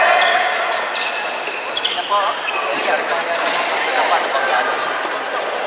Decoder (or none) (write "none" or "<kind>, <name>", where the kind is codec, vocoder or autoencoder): none